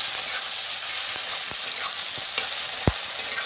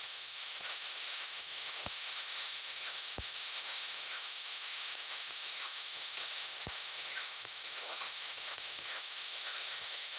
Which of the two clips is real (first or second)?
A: first